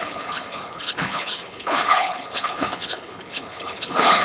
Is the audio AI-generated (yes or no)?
yes